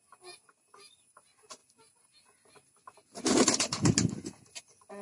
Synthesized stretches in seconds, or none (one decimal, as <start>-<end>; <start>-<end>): none